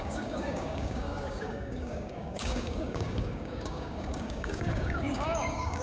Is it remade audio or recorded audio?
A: remade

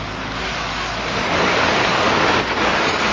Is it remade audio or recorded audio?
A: remade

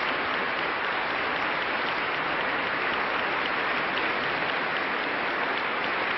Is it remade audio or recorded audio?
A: recorded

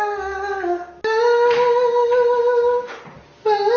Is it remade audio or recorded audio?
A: recorded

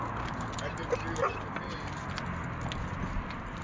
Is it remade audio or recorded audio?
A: recorded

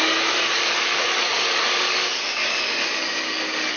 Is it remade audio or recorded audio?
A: remade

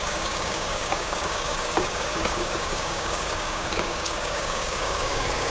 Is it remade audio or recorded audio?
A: remade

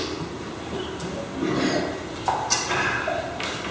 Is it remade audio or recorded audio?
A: recorded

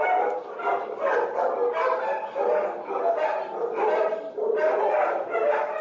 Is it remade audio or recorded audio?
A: recorded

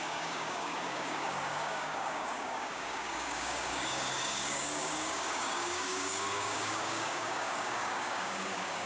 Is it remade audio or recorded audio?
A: remade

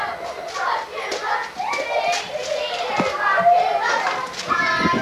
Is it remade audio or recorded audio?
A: recorded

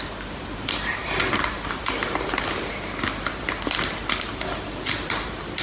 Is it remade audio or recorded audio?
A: recorded